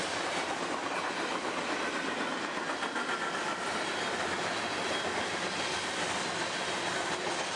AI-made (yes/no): no